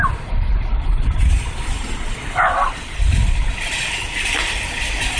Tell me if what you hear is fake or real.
real